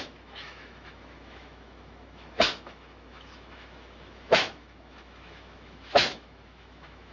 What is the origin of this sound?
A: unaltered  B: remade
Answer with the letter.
B